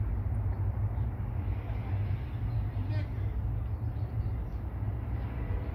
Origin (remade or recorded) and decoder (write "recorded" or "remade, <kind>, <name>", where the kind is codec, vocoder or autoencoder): recorded